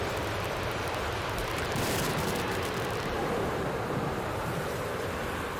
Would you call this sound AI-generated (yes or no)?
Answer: yes